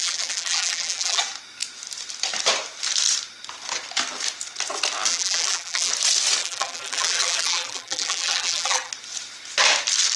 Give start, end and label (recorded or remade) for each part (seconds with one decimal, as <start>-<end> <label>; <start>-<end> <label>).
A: 0.0-1.2 remade; 1.2-5.1 recorded; 5.1-5.9 remade; 5.9-6.4 recorded; 6.4-8.9 remade; 8.9-10.2 recorded